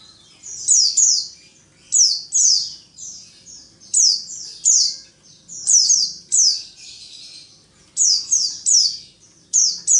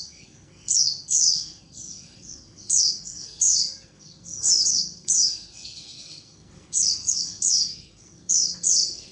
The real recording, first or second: first